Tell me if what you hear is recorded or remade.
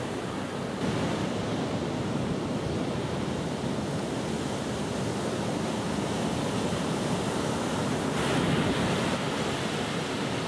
recorded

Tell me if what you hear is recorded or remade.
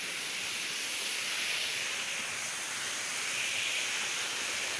recorded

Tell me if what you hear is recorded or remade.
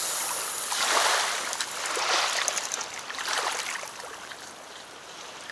recorded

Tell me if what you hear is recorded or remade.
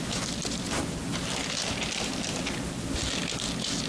recorded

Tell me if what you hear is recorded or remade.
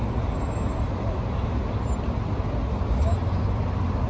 recorded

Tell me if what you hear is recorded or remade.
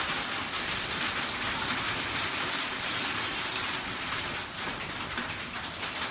recorded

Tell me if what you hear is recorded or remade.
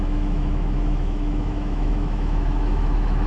remade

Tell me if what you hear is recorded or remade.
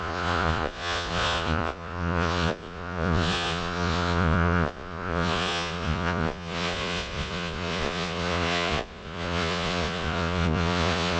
remade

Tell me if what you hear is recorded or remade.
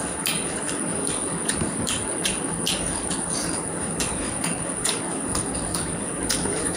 remade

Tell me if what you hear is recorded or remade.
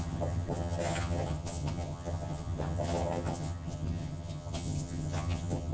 remade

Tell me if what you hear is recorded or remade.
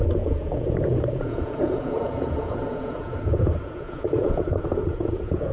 remade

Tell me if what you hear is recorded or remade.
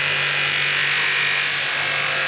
recorded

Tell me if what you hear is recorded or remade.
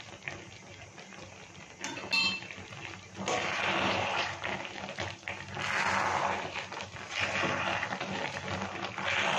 recorded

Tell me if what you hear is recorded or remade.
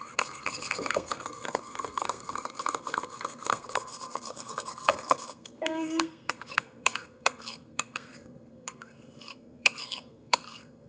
remade